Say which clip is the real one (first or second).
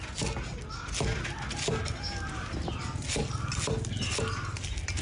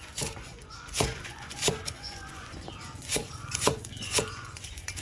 first